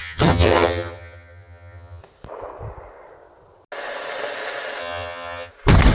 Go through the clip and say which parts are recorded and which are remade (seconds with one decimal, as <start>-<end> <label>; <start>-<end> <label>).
0.0-2.0 remade; 2.0-4.8 recorded; 4.8-5.5 remade; 5.5-5.9 recorded